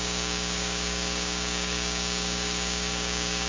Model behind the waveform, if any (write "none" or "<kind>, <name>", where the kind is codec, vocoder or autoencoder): codec, DAC